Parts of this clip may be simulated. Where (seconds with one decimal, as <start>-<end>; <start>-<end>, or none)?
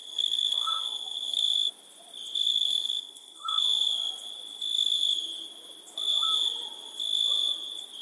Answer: 0.0-1.4; 2.5-3.6